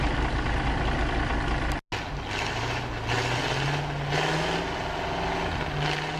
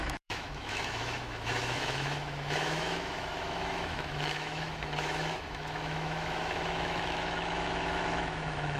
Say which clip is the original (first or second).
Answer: first